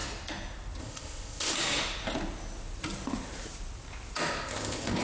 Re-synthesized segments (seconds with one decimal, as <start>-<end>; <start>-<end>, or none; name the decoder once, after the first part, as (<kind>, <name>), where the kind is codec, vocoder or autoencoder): 0.8-1.5 (codec, ZipCodec); 4.5-5.0